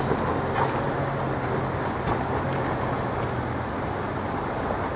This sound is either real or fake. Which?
real